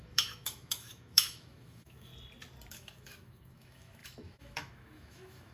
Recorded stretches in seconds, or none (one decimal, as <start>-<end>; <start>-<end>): 2.1-2.7